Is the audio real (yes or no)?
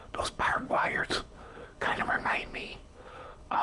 no